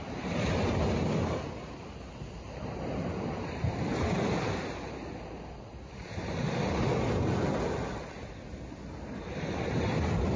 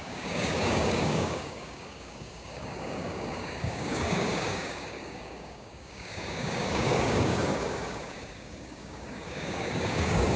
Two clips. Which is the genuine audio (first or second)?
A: first